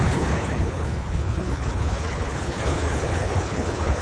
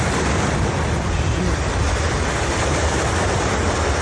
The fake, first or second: first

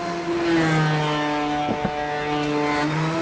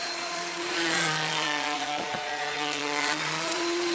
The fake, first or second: second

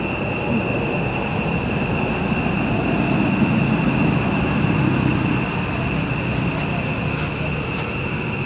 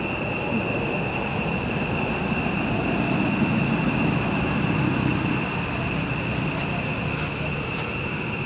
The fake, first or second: second